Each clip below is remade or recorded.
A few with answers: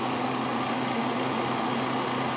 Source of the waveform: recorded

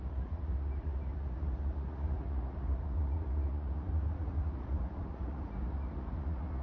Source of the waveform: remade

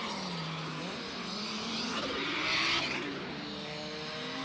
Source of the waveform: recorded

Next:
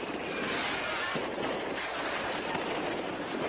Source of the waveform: remade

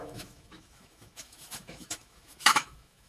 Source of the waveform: remade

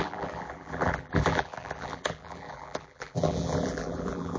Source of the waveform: remade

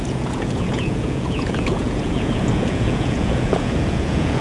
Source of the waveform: remade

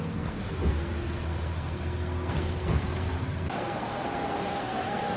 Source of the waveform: remade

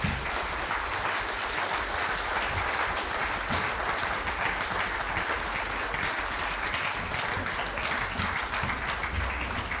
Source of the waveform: recorded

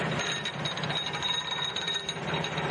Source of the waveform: remade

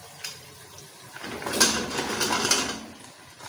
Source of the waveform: recorded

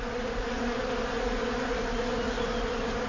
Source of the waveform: recorded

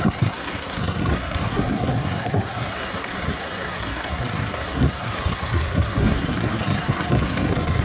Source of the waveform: remade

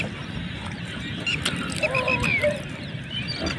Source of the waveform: recorded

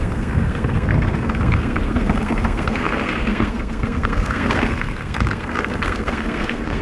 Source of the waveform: remade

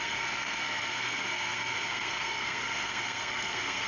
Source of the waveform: remade